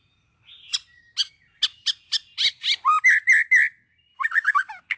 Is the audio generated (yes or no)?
no